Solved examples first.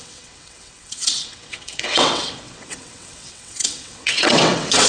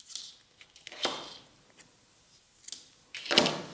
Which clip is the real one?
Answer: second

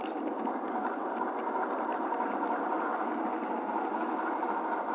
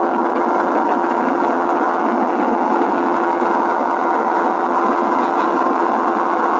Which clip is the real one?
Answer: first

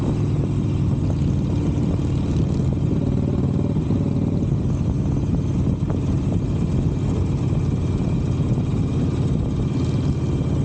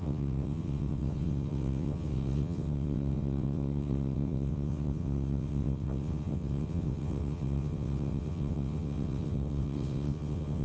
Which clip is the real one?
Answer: first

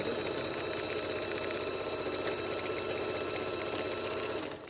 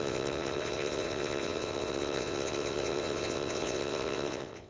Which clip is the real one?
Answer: first